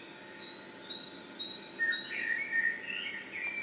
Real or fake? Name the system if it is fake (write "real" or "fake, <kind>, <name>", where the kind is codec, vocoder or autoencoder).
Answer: real